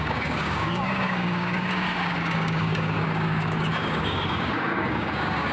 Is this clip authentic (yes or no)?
no